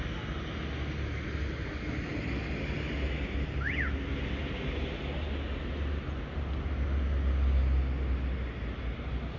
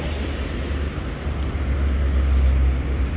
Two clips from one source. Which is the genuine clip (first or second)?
first